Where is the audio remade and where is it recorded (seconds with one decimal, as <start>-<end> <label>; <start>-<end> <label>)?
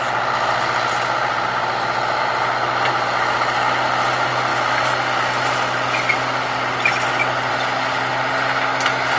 0.0-9.2 recorded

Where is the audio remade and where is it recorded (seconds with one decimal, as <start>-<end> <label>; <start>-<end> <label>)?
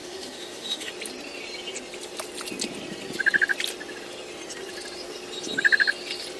0.0-0.9 remade; 0.9-6.4 recorded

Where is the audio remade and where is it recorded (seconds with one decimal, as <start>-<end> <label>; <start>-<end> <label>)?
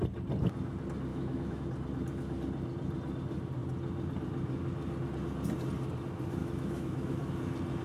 0.0-1.1 recorded; 1.1-1.6 remade; 1.6-6.4 recorded; 6.4-7.3 remade; 7.3-7.8 recorded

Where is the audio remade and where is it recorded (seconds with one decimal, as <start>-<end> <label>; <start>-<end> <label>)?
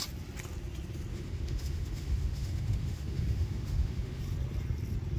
0.0-1.1 recorded; 1.1-4.2 remade; 4.2-5.2 recorded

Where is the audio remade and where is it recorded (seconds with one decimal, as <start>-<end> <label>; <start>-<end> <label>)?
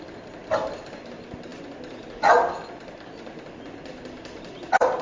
0.0-5.0 recorded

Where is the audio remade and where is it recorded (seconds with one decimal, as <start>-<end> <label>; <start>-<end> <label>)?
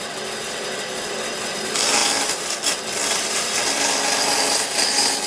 0.0-5.3 recorded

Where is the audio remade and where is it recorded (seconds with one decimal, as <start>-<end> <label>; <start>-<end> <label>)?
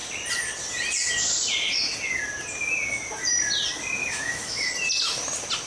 0.0-4.0 recorded; 4.0-4.7 remade; 4.7-5.7 recorded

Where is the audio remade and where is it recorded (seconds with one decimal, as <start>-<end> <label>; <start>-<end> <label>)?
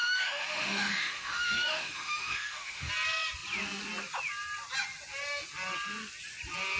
0.0-2.9 remade; 2.9-6.8 recorded